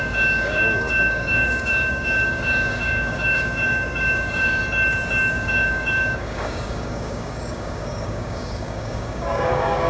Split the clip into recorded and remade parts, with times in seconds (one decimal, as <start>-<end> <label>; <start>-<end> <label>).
0.0-4.6 remade; 4.6-5.3 recorded; 5.3-9.9 remade